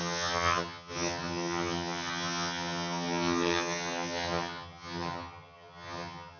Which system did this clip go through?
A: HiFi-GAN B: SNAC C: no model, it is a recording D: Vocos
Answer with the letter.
A